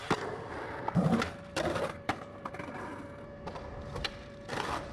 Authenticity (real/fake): fake